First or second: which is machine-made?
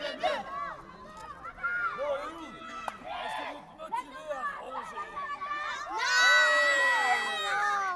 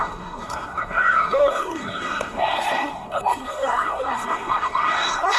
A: second